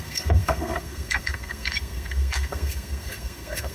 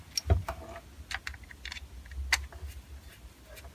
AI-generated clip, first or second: first